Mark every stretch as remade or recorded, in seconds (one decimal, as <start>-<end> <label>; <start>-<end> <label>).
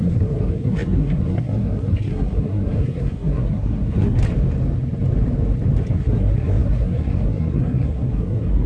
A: 0.0-4.2 remade; 4.2-5.9 recorded; 5.9-8.7 remade